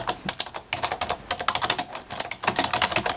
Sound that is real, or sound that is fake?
real